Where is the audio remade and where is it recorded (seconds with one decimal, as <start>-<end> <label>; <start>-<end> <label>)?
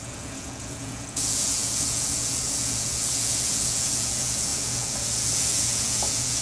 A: 0.0-6.4 remade